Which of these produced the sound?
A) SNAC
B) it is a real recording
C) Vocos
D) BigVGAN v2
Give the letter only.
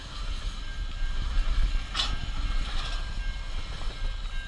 B